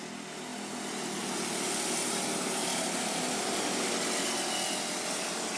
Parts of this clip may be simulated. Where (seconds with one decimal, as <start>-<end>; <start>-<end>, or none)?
none